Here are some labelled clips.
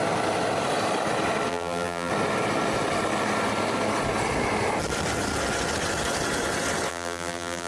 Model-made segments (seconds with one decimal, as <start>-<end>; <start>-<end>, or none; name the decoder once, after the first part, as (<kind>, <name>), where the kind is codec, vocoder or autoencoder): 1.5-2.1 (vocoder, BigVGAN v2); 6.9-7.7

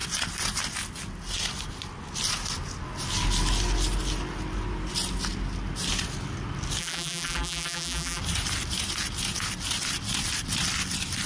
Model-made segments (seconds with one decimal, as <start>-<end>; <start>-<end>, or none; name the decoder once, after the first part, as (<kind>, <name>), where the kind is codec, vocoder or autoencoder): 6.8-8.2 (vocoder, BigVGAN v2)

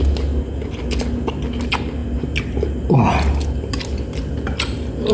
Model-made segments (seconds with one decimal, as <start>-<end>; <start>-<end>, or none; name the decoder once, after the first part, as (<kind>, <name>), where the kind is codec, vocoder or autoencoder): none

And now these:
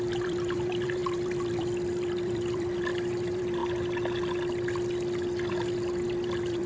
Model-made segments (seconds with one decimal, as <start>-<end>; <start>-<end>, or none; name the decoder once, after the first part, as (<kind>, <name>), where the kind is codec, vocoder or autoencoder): 0.0-3.6 (vocoder, BigVGAN v2); 5.5-6.7

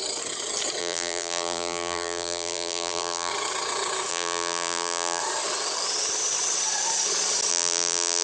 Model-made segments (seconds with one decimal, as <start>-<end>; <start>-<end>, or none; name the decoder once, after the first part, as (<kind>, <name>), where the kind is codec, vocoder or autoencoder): 0.8-3.3 (vocoder, BigVGAN v2); 4.1-5.2; 7.5-8.2

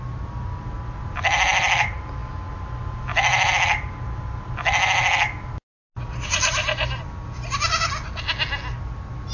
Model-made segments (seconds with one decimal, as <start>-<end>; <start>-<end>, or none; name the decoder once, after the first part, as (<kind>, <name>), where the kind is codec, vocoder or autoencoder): 2.2-3.5 (vocoder, BigVGAN v2)

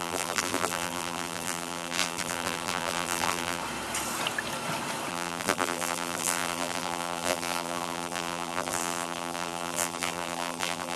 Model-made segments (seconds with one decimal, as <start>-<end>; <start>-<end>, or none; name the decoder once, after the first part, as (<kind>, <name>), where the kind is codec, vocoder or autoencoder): 0.0-3.6 (vocoder, BigVGAN v2); 5.1-11.0